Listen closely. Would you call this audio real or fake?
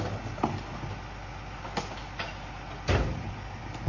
real